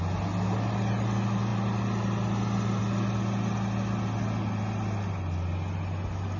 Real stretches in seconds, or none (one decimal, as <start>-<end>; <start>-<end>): 0.0-6.4